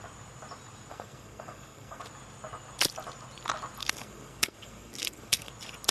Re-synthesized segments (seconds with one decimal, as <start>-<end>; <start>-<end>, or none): 0.9-2.0; 3.8-5.5